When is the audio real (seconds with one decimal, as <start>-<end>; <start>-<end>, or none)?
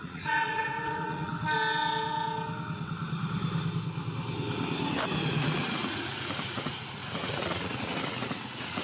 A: 1.3-5.3